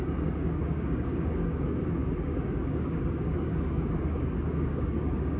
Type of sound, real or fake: fake